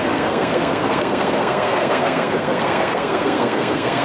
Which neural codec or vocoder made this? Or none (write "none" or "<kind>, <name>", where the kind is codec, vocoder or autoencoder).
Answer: codec, SNAC